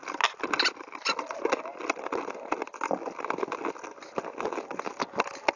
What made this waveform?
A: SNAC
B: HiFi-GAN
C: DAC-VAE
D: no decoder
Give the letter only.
D